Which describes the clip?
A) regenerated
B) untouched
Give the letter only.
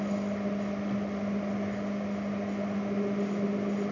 B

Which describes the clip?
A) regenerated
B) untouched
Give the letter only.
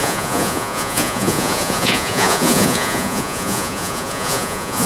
A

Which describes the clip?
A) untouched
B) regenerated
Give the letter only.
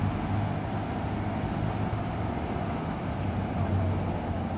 A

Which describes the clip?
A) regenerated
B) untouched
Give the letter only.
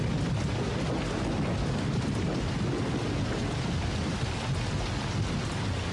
B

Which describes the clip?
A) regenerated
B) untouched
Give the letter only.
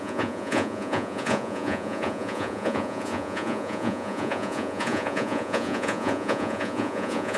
A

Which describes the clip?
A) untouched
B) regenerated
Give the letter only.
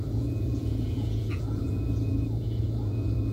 B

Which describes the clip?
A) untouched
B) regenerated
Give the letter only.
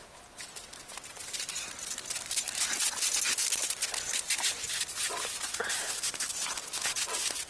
A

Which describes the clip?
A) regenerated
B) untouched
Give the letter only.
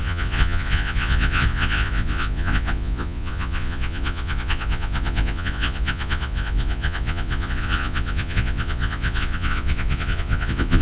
A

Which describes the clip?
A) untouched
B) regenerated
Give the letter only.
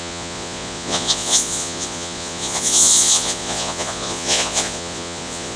B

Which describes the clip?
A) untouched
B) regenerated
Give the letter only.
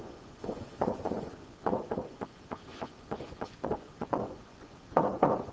B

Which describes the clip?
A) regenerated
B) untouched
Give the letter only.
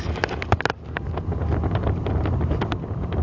B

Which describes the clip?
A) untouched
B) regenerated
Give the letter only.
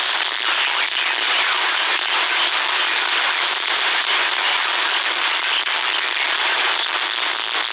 A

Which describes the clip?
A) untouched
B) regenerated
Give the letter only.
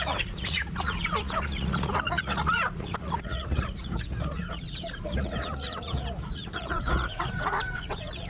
B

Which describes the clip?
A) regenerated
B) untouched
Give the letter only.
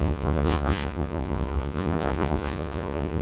A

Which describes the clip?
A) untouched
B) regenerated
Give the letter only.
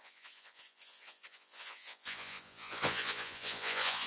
B